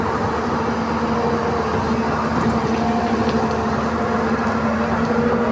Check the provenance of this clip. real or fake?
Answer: real